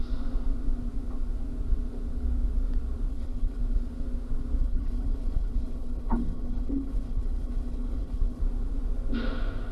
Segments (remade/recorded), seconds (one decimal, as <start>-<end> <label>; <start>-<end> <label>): 0.0-3.1 recorded; 3.1-3.6 remade; 3.6-4.6 recorded; 4.6-8.4 remade; 8.4-9.7 recorded